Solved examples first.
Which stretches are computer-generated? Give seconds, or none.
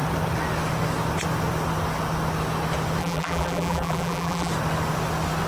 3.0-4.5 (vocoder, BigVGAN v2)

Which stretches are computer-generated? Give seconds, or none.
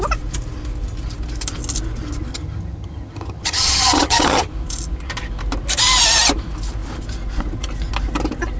2.3-4.5 (vocoder, HiFi-GAN)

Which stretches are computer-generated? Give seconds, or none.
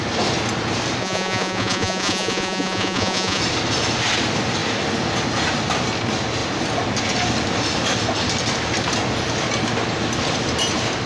1.0-3.4 (vocoder, Vocos)